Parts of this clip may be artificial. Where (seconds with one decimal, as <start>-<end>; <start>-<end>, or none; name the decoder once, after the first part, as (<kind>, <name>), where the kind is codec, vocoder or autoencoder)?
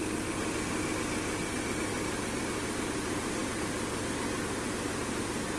none